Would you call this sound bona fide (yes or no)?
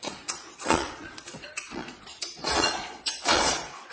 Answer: no